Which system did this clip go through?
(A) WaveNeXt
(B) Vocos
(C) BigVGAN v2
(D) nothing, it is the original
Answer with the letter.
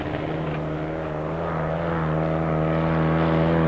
D